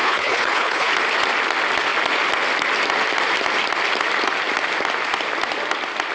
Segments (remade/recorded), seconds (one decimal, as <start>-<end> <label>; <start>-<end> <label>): 0.0-0.9 remade; 0.9-6.1 recorded